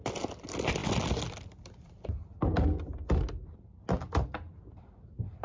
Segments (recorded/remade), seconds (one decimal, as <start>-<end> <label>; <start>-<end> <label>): 0.0-5.4 recorded